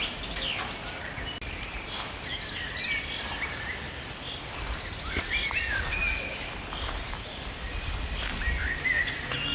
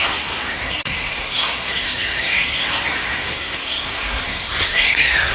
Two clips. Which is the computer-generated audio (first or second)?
second